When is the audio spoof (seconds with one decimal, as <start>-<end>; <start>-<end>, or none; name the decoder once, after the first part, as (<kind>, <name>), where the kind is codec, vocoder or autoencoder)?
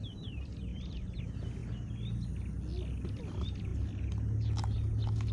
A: 0.7-1.2 (vocoder, BigVGAN v2)